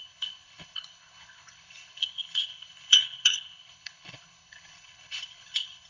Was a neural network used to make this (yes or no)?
yes